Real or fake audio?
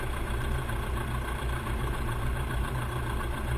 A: fake